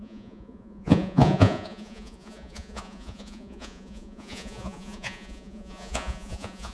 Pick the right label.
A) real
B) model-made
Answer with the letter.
B